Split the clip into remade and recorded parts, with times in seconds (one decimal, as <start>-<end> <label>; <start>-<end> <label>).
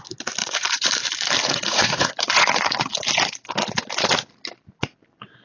0.0-0.4 recorded; 0.4-0.9 remade; 0.9-1.4 recorded; 1.4-3.0 remade; 3.0-5.4 recorded